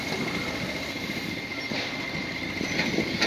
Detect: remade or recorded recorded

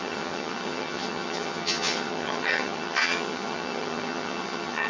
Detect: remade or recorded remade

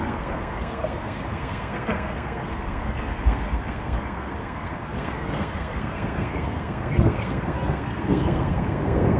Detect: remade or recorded remade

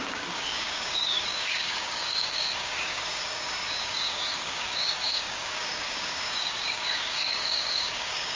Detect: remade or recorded remade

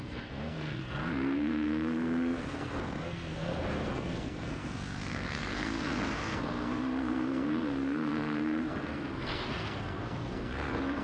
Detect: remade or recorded remade